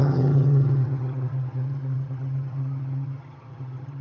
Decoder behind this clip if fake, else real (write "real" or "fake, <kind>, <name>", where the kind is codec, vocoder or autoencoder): fake, vocoder, HiFi-GAN